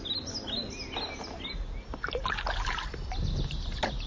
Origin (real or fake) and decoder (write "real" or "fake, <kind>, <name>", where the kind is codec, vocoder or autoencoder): real